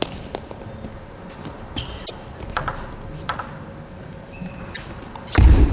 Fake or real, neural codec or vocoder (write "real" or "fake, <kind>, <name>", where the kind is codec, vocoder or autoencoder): real